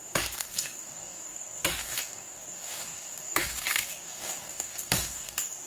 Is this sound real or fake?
fake